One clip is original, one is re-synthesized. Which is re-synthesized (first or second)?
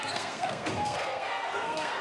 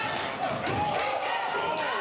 first